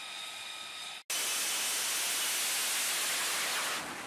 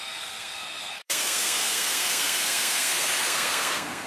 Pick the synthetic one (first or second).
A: second